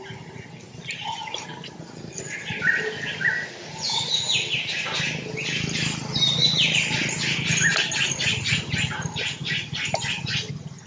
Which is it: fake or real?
real